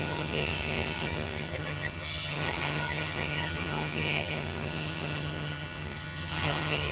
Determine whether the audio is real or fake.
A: fake